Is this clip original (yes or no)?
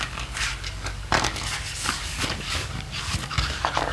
no